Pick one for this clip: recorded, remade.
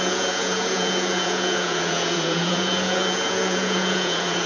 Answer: remade